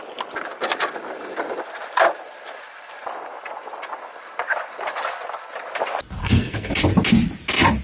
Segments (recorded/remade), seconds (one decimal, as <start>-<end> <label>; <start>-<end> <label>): 0.0-6.2 recorded; 6.2-6.7 remade; 6.7-7.8 recorded